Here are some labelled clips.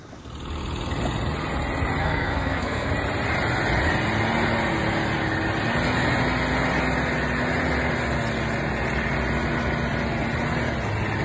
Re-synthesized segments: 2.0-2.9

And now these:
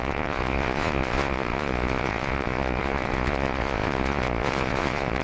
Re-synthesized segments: 0.0-5.2

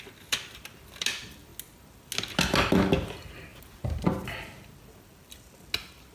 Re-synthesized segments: none

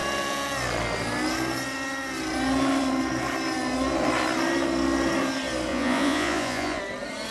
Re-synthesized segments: 5.7-6.8

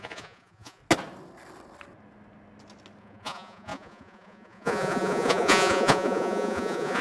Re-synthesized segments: 0.0-0.8; 3.0-7.0

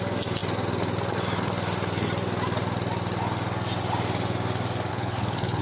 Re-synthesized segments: 4.9-5.6